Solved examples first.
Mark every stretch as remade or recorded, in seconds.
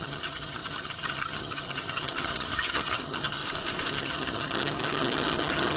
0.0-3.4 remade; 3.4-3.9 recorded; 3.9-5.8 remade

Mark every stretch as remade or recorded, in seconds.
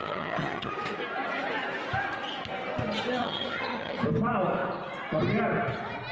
0.0-0.7 remade; 0.7-3.2 recorded; 3.2-4.0 remade; 4.0-6.1 recorded